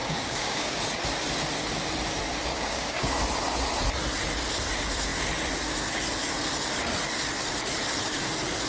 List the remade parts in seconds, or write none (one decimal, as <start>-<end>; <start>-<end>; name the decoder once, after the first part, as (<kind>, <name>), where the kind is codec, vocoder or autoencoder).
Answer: 0.0-0.8 (codec, DAC); 2.5-3.1